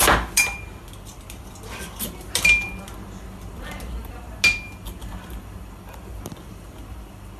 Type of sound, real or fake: real